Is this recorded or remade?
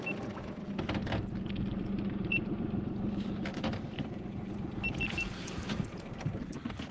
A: recorded